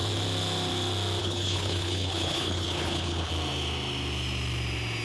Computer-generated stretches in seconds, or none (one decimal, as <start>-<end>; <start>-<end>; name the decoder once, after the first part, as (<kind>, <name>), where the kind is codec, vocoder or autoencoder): 1.2-3.3 (codec, HILCodec)